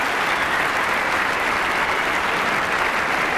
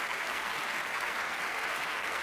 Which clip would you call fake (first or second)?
second